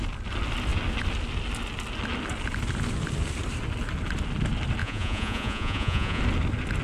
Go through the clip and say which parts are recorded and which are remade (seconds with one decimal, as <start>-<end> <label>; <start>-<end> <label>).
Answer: 0.0-4.8 recorded; 4.8-6.2 remade; 6.2-6.8 recorded